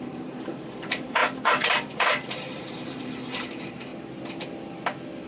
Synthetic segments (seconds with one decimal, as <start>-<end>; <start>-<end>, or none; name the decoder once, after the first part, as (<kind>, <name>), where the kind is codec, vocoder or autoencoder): 0.0-3.9 (vocoder, BigVGAN v2)